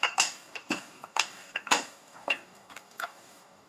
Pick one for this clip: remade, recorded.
remade